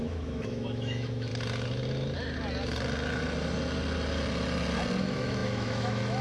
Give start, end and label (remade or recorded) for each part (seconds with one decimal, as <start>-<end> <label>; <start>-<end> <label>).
0.0-1.3 remade; 1.3-5.0 recorded; 5.0-6.2 remade

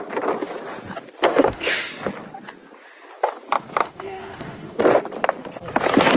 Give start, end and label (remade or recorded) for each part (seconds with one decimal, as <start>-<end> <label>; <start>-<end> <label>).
0.0-1.3 recorded; 1.3-1.9 remade; 1.9-3.8 recorded; 3.8-4.8 remade; 4.8-6.2 recorded